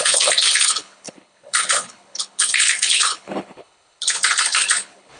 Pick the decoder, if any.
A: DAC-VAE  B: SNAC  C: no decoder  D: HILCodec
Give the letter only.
D